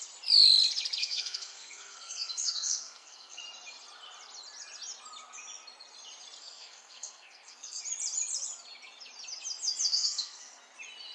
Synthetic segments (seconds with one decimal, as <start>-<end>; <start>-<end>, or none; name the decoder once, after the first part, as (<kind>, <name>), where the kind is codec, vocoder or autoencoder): 1.0-3.4 (codec, SNAC); 6.4-7.8; 9.9-10.6